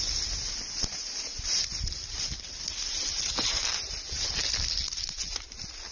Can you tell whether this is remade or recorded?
recorded